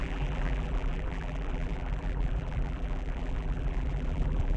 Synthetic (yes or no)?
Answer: yes